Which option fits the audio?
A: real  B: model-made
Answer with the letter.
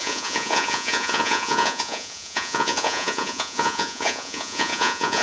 B